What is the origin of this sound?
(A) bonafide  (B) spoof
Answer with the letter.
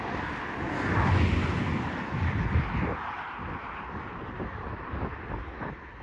A